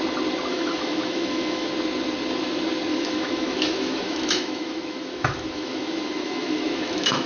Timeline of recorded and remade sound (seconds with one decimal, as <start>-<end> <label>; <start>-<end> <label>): 0.0-0.5 recorded; 0.5-1.7 remade; 1.7-2.9 recorded; 2.9-7.3 remade